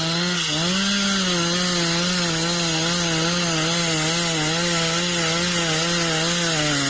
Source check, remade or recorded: recorded